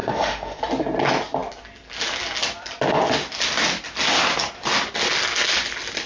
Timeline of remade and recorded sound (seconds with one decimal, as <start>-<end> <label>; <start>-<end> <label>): 0.0-0.6 remade; 0.6-6.1 recorded